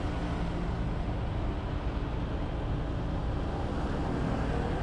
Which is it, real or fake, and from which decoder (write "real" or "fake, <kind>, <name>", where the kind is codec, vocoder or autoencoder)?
real